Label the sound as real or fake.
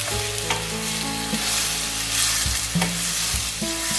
real